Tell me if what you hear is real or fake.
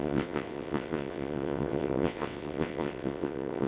fake